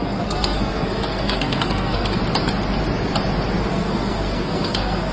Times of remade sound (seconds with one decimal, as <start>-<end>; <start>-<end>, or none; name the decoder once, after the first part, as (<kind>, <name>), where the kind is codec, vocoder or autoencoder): 0.0-2.2 (codec, SNAC); 3.7-5.1

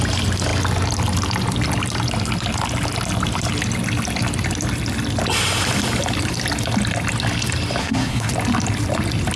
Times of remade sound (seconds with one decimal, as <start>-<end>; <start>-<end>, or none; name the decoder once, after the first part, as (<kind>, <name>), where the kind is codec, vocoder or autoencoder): 7.8-8.3 (codec, SNAC)

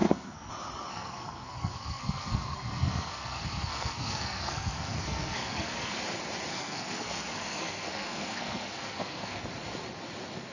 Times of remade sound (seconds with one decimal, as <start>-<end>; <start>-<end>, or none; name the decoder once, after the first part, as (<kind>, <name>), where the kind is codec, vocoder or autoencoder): 0.0-0.5 (codec, SNAC); 0.9-6.0; 6.5-9.4

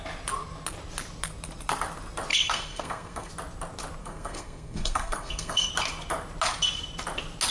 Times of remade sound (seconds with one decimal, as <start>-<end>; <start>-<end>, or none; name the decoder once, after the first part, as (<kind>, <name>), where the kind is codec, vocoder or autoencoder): 2.3-3.3 (codec, SNAC); 4.0-5.7

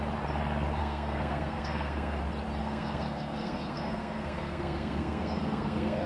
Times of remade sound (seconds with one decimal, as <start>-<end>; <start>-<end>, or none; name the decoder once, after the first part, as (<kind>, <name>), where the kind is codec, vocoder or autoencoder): 0.8-2.2 (codec, SNAC); 2.6-6.1

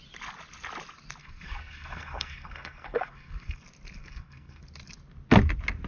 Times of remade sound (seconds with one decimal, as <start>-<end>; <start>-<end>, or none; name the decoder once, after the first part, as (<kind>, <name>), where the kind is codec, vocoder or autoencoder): 1.2-3.6 (codec, SNAC); 4.0-4.6